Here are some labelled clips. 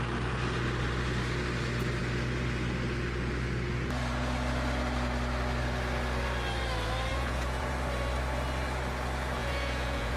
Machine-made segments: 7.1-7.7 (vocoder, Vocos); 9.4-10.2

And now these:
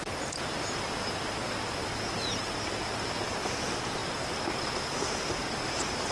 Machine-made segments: none